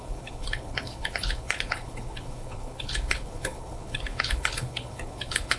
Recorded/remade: remade